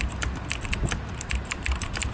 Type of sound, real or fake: real